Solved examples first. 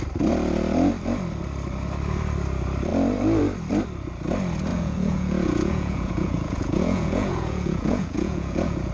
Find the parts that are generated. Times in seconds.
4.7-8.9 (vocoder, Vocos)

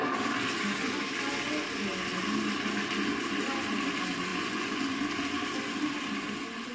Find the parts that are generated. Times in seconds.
4.3-4.8 (vocoder, Vocos)

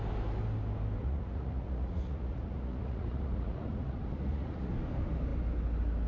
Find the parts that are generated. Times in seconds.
1.0-4.7 (vocoder, Vocos)